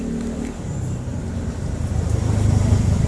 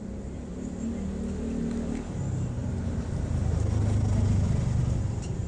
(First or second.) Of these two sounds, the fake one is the first